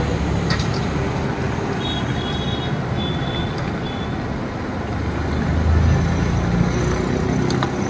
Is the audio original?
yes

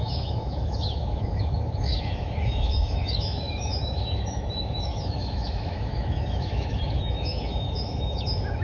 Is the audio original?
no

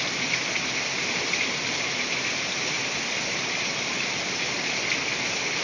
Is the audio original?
yes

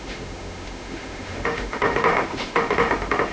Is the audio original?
no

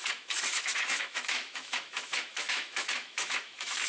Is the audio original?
no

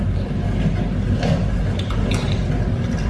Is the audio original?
yes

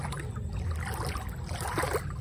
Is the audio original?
yes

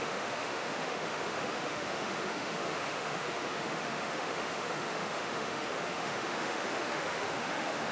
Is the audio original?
no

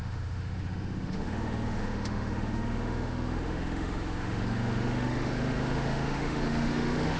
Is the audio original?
no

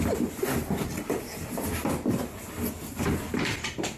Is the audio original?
yes